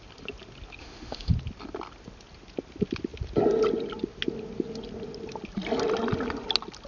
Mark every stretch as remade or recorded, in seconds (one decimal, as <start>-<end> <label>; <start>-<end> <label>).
0.0-0.8 recorded; 0.8-1.3 remade; 1.3-6.9 recorded